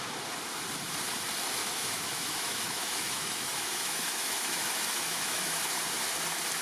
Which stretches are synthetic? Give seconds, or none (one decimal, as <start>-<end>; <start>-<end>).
1.6-5.6